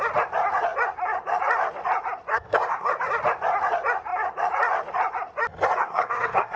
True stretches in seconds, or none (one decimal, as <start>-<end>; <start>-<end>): 0.0-2.3; 2.9-5.8